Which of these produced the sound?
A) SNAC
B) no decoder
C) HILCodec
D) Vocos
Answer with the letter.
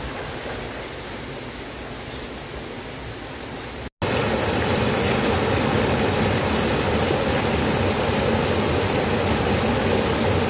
B